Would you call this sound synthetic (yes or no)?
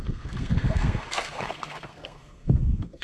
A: yes